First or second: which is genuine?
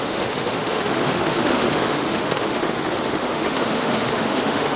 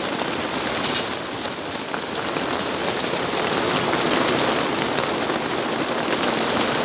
second